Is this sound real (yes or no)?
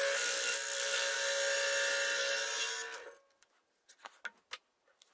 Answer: yes